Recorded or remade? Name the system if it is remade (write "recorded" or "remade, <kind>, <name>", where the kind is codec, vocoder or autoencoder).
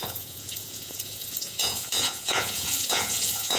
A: remade, vocoder, Vocos